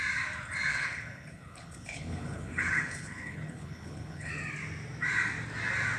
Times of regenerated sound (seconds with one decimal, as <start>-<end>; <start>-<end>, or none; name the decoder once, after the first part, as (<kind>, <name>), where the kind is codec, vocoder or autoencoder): 0.7-4.3 (codec, HILCodec)